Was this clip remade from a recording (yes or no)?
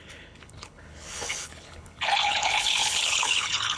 yes